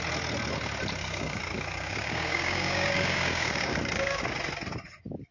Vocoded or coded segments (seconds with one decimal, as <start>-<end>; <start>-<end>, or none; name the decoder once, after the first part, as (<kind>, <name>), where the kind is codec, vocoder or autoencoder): 1.0-4.2 (codec, DAC)